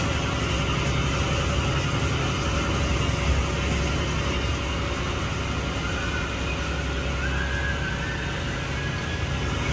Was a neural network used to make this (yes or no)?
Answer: no